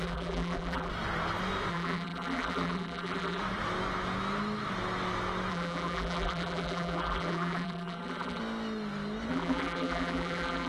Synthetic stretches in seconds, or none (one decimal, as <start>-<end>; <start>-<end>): 0.0-0.9; 1.7-3.4; 5.5-8.4; 9.3-10.7